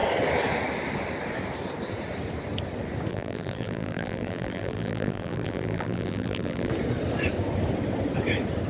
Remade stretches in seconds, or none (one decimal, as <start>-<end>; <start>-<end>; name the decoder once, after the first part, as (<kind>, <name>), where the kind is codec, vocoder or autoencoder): 3.1-6.7 (vocoder, BigVGAN v2)